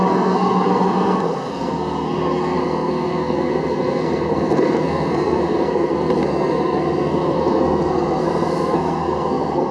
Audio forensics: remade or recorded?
remade